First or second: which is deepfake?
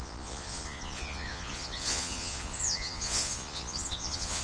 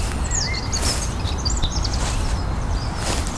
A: first